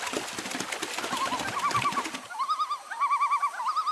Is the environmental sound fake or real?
real